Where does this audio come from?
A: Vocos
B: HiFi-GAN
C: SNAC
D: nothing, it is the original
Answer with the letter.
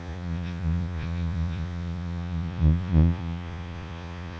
A